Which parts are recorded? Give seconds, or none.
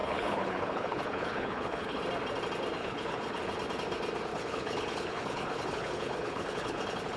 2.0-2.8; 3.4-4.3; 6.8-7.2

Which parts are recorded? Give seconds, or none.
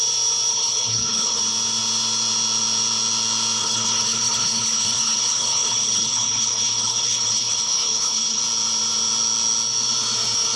0.0-0.5; 1.4-3.6; 8.4-10.6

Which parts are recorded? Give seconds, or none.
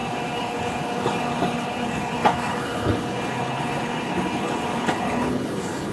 none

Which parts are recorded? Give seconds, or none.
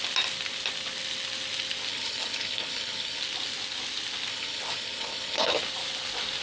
0.0-1.9; 3.2-4.3; 5.5-6.4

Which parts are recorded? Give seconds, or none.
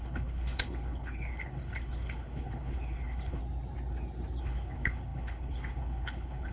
3.4-4.4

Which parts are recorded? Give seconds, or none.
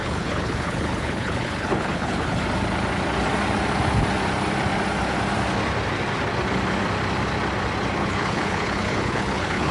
2.4-8.0